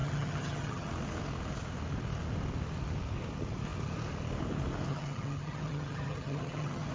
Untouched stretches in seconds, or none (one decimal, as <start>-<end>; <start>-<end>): 0.9-4.9